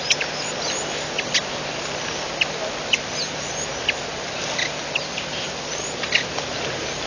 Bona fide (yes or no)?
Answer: yes